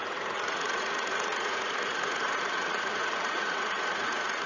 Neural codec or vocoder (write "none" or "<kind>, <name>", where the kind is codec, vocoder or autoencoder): vocoder, Vocos